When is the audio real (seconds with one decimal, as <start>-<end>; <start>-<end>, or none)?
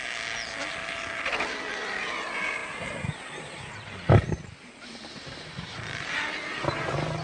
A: 0.0-7.2